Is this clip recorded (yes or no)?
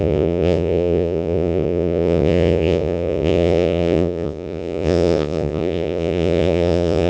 no